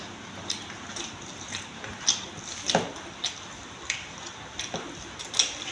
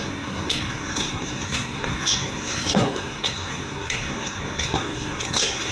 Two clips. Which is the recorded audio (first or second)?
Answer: first